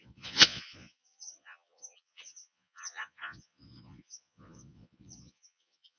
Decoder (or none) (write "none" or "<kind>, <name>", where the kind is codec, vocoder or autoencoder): vocoder, Vocos